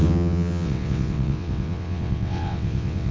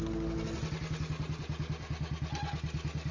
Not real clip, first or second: first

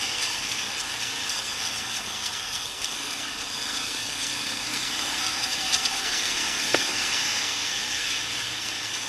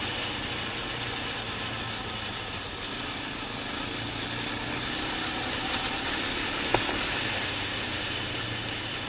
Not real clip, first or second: first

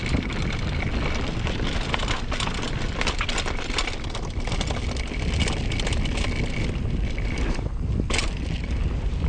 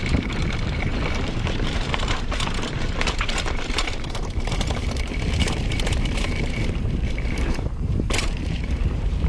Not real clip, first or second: second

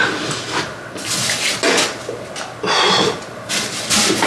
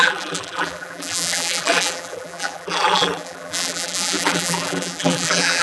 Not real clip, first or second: second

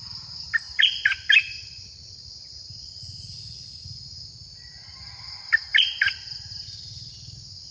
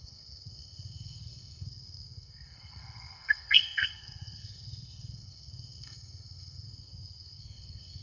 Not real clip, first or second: second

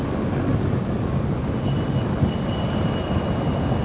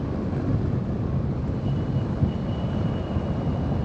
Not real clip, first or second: second